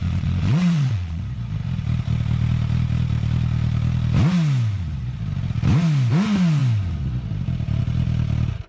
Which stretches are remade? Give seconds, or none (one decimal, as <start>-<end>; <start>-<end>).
0.0-1.2